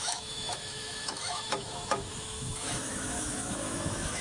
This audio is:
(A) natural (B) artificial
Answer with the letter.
B